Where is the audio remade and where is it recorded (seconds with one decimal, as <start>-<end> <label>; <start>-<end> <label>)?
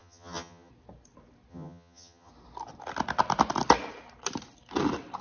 0.0-0.7 remade; 0.7-1.5 recorded; 1.5-2.3 remade; 2.3-5.2 recorded